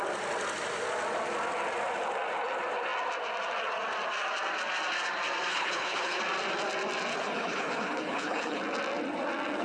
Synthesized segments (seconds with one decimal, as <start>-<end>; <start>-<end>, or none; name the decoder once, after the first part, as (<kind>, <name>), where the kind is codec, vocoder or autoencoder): 5.5-6.2 (codec, HILCodec); 7.1-8.6